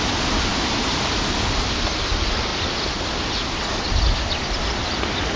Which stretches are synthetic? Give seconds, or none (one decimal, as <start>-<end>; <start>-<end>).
none